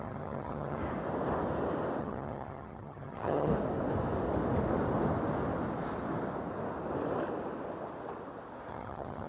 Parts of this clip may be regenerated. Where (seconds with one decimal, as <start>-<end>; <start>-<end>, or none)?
0.0-0.8; 2.0-3.5; 8.7-9.3